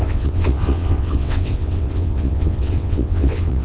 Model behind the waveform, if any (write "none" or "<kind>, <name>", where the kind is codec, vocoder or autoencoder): vocoder, WaveNeXt